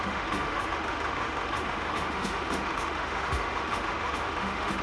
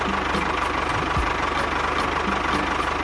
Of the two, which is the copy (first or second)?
first